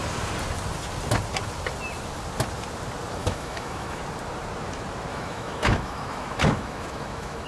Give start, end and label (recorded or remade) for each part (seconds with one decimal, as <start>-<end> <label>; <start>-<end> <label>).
0.0-3.2 recorded; 3.2-4.0 remade; 4.0-5.1 recorded; 5.1-7.5 remade